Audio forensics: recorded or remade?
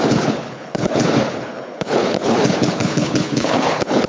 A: remade